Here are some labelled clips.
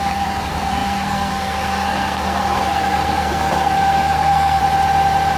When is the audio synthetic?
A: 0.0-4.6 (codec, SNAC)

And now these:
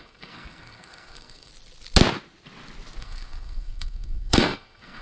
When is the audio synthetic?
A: 0.0-1.5 (codec, SNAC); 3.0-5.0

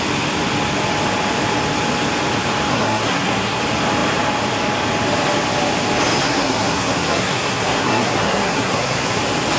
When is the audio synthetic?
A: 2.7-3.6 (codec, SNAC); 6.2-9.2

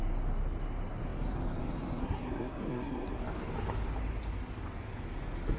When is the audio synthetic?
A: 2.0-3.2 (codec, SNAC)

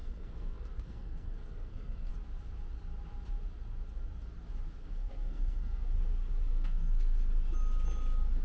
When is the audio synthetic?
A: 0.0-2.1 (codec, SNAC); 4.8-5.9; 6.5-7.2

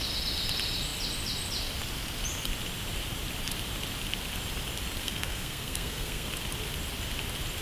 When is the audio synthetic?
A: 5.0-6.3 (codec, SNAC)

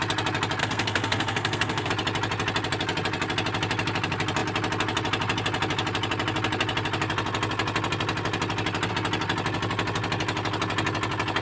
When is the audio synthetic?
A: 0.6-1.9 (codec, SNAC)